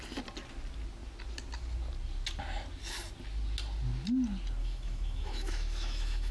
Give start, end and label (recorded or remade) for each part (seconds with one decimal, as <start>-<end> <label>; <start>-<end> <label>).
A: 0.0-4.6 recorded; 4.6-6.3 remade